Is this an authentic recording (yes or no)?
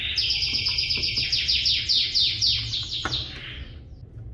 yes